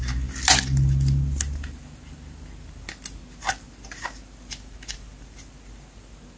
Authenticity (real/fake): real